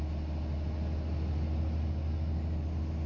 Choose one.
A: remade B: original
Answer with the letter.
B